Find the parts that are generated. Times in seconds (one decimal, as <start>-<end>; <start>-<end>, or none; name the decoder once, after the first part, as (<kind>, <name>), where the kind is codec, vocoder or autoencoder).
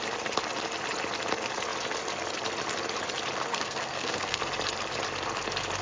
3.5-4.4 (codec, SNAC)